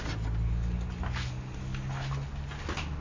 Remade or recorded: recorded